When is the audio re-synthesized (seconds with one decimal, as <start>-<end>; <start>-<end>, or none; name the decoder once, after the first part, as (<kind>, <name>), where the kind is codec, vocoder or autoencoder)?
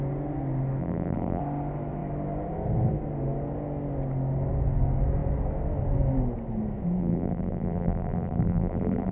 0.8-1.4 (vocoder, BigVGAN v2); 7.0-9.1